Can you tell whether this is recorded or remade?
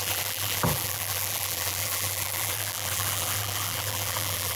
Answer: remade